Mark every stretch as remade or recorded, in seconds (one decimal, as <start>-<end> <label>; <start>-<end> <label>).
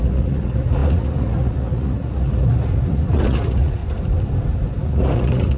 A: 0.0-3.8 remade; 3.8-4.8 recorded; 4.8-5.6 remade